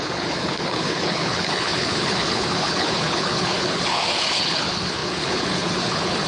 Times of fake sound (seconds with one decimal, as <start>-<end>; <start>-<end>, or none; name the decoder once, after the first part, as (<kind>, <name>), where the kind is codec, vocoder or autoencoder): 0.0-6.3 (codec, HILCodec)